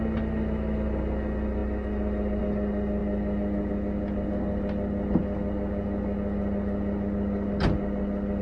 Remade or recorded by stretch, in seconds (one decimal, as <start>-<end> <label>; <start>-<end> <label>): 0.0-8.4 recorded